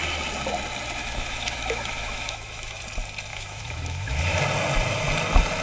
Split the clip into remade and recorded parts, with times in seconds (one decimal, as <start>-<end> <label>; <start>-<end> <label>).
0.0-1.0 recorded; 1.0-2.8 remade; 2.8-3.3 recorded; 3.3-4.4 remade; 4.4-5.6 recorded